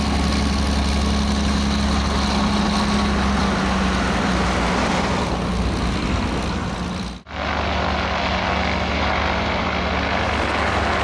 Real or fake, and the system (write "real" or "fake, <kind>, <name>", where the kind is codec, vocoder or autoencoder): real